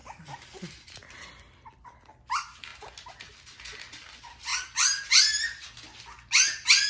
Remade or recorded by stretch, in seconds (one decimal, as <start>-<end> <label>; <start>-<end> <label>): 0.0-6.9 recorded